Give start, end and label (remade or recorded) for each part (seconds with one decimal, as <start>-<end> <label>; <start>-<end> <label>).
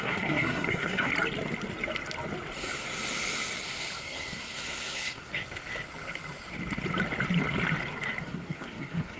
0.0-1.1 remade; 1.1-4.0 recorded; 4.0-5.3 remade; 5.3-8.2 recorded; 8.2-9.2 remade